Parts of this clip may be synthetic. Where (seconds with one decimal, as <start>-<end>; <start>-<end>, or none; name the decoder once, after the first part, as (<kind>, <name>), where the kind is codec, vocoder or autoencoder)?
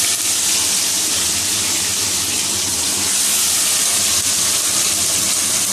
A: none